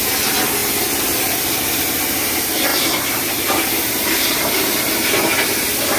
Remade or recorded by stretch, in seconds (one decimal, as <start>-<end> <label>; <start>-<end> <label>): 0.0-2.7 recorded; 2.7-4.8 remade; 4.8-6.0 recorded